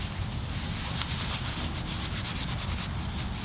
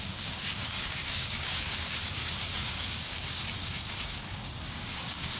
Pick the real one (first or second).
first